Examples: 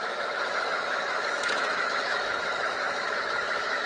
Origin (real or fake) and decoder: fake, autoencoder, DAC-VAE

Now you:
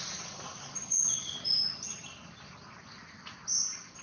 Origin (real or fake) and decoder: real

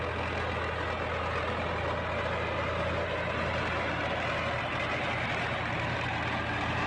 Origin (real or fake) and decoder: real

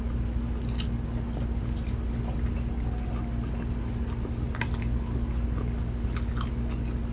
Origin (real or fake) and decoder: real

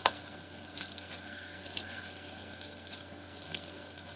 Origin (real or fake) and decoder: fake, codec, SNAC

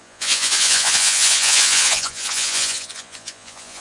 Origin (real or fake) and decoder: fake, vocoder, Vocos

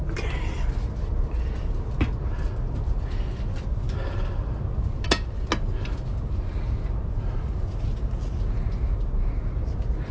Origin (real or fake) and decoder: real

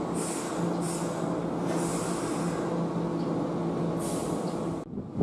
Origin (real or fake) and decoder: real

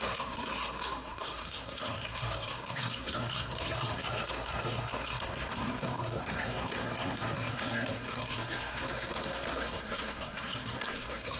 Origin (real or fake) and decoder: fake, codec, SNAC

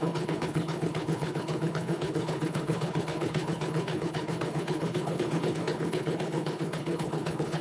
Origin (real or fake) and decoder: fake, codec, HILCodec